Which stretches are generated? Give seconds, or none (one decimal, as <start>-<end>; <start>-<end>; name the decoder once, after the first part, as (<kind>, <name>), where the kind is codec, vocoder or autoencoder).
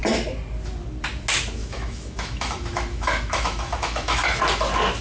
1.6-4.4 (autoencoder, DAC-VAE)